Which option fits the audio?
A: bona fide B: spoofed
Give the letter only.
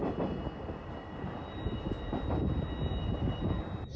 A